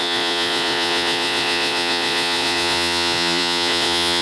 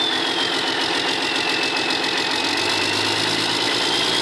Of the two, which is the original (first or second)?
second